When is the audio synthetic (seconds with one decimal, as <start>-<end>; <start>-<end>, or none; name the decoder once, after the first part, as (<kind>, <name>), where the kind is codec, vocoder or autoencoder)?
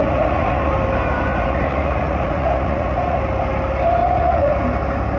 0.0-0.7 (vocoder, Vocos); 1.3-3.2; 4.0-4.5